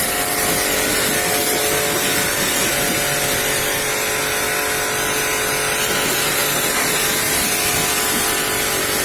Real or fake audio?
real